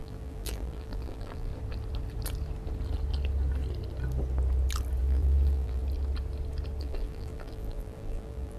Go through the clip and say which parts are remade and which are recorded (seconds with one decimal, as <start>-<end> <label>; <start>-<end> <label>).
0.0-1.5 remade; 1.5-5.0 recorded; 5.0-5.8 remade; 5.8-6.8 recorded; 6.8-8.6 remade